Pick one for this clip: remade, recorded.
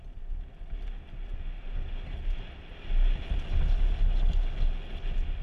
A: recorded